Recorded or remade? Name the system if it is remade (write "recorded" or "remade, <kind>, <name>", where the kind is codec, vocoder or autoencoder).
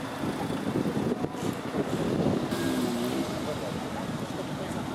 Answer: recorded